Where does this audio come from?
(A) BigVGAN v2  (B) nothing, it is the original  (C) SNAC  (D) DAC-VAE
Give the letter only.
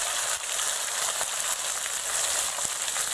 B